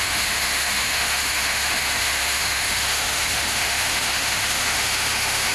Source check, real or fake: fake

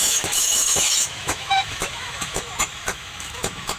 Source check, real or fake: fake